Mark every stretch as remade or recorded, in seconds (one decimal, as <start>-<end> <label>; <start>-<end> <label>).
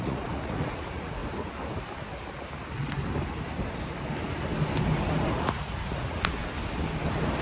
0.0-1.2 remade; 1.2-5.3 recorded; 5.3-6.4 remade; 6.4-7.4 recorded